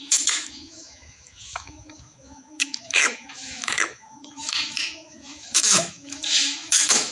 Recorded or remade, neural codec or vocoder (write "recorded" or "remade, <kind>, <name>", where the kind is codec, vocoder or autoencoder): remade, autoencoder, DAC-VAE